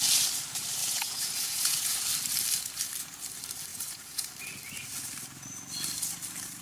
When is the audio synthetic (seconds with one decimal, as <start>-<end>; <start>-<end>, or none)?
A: 0.8-2.0; 3.7-4.3